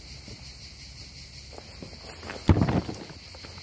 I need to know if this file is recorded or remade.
recorded